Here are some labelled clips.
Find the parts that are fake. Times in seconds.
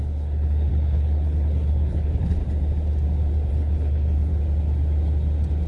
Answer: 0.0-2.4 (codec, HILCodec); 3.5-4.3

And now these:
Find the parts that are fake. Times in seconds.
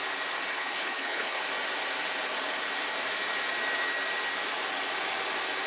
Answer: 0.5-1.4 (codec, HILCodec)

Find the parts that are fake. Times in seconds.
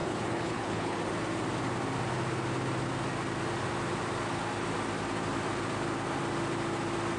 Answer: 0.0-1.0 (codec, HILCodec)